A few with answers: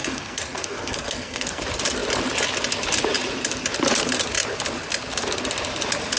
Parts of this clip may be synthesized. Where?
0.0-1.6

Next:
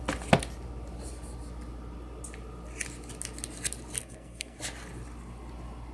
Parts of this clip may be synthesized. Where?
4.0-4.6

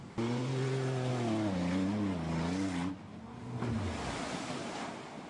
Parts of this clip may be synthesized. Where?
0.0-1.1; 4.3-5.3